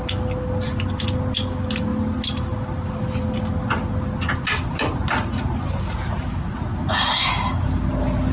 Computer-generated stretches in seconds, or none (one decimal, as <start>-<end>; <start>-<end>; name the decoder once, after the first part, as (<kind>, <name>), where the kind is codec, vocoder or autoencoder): none